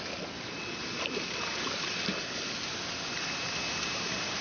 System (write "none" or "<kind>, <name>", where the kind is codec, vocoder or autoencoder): none